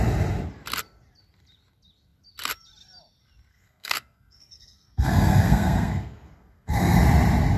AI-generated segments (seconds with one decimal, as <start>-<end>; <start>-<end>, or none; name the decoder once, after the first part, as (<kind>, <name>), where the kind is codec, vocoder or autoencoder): 3.5-7.0 (codec, SNAC)